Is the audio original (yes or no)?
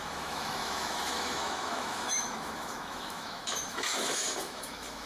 no